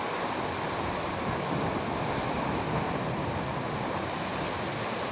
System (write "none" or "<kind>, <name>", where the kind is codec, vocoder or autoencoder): none